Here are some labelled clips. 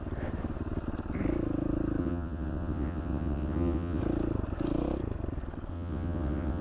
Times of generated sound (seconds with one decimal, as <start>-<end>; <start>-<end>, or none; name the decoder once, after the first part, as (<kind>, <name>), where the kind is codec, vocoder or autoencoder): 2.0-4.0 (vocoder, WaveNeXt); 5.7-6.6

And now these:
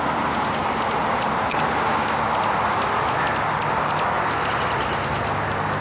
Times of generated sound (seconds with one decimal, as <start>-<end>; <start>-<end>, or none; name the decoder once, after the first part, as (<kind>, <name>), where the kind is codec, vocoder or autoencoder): none

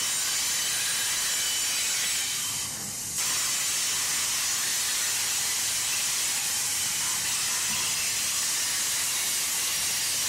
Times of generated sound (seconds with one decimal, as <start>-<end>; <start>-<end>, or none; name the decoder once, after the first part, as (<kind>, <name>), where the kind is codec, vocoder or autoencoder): 4.9-7.1 (vocoder, BigVGAN v2)